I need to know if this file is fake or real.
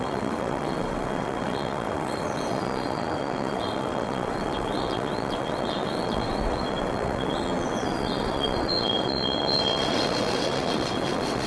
fake